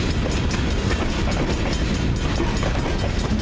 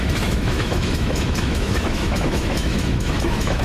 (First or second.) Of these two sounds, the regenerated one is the second